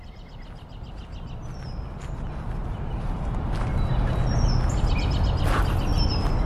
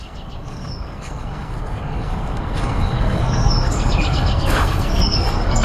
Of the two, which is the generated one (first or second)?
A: second